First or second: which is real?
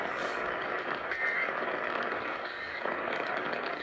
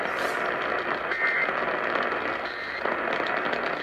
second